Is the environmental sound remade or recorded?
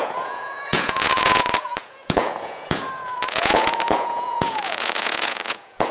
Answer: remade